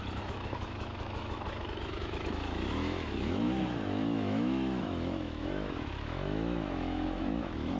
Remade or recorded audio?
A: remade